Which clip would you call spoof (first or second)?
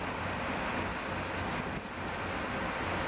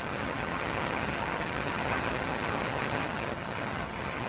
second